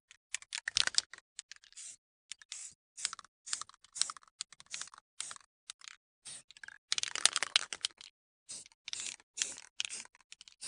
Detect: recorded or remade recorded